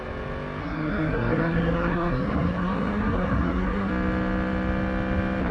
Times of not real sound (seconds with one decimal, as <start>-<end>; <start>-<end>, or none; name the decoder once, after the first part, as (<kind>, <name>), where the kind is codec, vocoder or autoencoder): 0.6-3.9 (codec, SNAC)